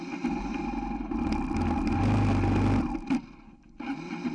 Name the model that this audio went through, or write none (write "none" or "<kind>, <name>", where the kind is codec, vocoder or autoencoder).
none